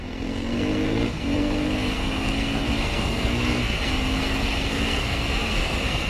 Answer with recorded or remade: remade